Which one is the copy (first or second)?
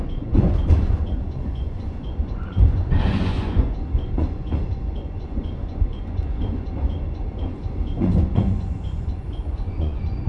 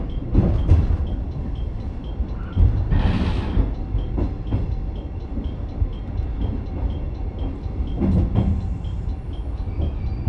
first